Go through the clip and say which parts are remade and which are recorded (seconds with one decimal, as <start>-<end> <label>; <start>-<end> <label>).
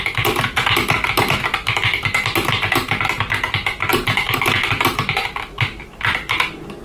0.0-6.8 recorded